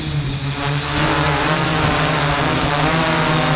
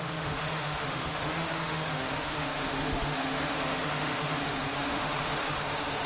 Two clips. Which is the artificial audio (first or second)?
second